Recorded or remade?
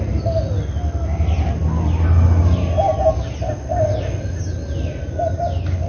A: recorded